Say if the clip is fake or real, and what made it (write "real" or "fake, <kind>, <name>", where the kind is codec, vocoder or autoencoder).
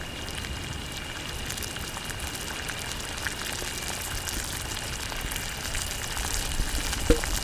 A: real